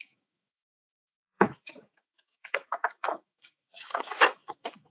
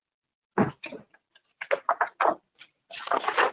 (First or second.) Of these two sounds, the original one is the second